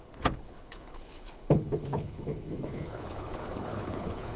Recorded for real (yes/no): no